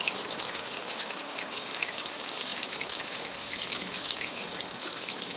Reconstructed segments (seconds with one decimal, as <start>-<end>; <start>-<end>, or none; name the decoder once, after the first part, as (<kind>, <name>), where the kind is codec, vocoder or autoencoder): 0.0-5.4 (autoencoder, DAC-VAE)